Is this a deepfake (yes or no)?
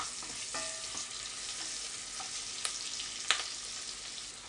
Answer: no